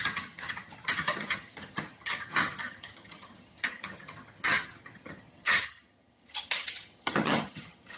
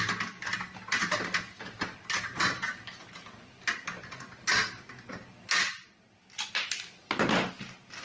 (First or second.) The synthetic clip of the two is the first